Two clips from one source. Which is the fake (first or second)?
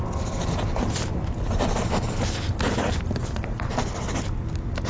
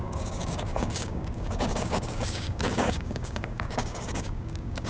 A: second